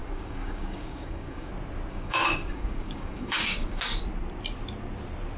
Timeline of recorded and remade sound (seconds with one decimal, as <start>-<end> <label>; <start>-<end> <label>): 0.0-1.5 remade; 1.5-1.9 recorded; 1.9-3.8 remade; 3.8-5.4 recorded